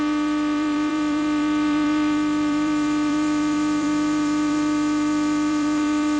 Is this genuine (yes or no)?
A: no